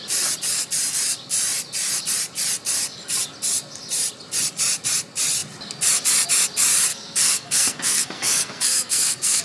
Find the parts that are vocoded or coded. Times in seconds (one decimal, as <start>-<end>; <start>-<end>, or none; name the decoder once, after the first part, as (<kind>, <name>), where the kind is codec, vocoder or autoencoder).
6.9-9.4 (codec, SNAC)